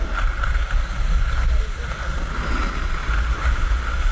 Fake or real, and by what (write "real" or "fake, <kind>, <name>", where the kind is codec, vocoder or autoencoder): real